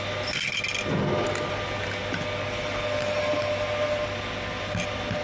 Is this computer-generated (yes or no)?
no